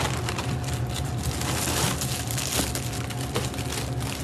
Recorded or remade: recorded